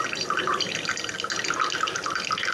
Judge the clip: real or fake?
real